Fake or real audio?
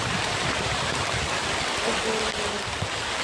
real